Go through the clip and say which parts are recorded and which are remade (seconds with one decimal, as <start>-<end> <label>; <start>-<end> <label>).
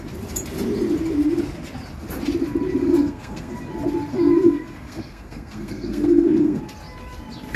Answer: 0.0-2.8 recorded; 2.8-3.5 remade; 3.5-4.1 recorded; 4.1-6.6 remade; 6.6-7.6 recorded